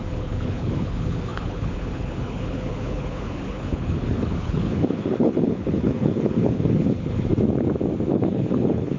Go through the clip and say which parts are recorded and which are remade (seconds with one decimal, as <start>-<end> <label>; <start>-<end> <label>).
0.0-7.3 remade; 7.3-8.1 recorded; 8.1-9.0 remade